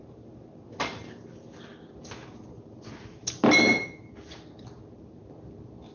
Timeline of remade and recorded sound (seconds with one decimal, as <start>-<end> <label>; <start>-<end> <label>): 0.0-5.9 recorded